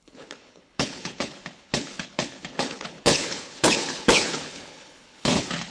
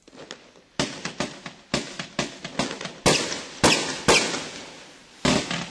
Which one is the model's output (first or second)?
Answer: first